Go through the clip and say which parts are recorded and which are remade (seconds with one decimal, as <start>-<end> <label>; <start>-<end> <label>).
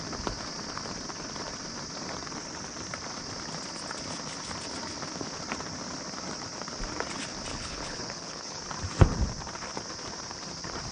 0.0-7.5 recorded; 7.5-8.6 remade; 8.6-10.9 recorded